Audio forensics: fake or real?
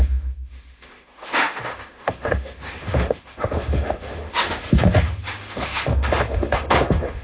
fake